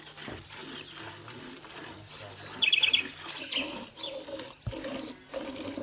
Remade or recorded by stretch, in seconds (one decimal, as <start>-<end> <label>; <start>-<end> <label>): 0.0-5.8 recorded